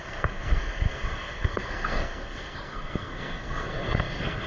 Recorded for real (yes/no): no